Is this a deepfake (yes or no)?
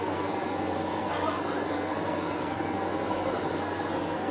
yes